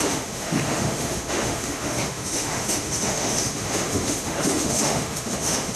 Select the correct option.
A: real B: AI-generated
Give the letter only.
B